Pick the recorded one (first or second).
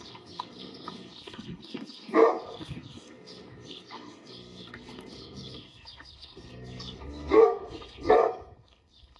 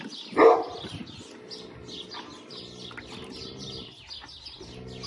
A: second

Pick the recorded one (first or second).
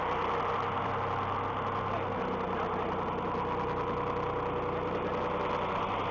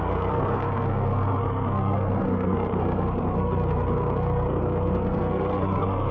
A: first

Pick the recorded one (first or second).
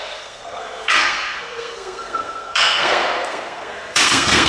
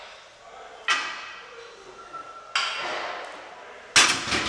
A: second